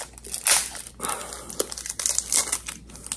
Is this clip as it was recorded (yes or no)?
yes